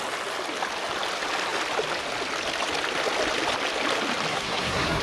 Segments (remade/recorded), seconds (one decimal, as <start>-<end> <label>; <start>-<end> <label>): 0.0-4.3 recorded; 4.3-5.0 remade